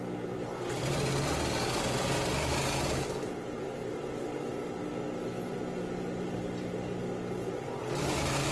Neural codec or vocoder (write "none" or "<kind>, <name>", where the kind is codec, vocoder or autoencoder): none